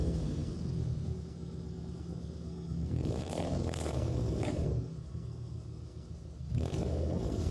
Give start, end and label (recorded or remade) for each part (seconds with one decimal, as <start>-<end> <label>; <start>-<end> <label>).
0.0-7.5 remade